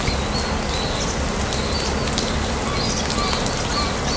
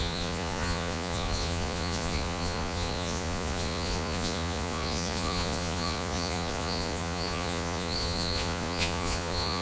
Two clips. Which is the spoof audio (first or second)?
second